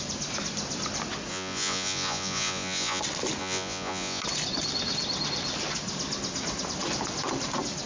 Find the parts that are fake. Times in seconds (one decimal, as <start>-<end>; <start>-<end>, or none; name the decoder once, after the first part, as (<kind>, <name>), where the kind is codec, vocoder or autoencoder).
1.3-3.0 (vocoder, Vocos); 3.4-4.2